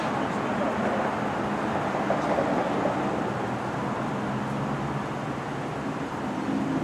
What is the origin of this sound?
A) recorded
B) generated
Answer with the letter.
A